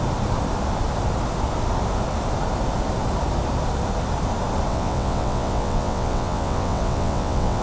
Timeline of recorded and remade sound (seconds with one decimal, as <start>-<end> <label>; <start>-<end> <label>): 0.0-4.7 recorded; 4.7-7.6 remade